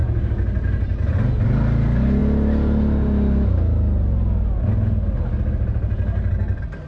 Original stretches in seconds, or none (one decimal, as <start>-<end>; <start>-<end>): 0.0-6.9